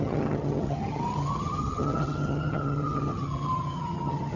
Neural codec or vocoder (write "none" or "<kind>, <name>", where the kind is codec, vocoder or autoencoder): vocoder, HiFi-GAN